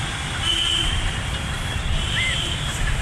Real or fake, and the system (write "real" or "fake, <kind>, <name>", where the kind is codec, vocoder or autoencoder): real